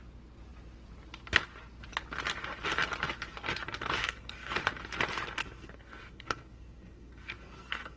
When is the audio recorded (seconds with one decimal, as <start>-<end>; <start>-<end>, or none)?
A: 0.0-4.0; 4.6-5.4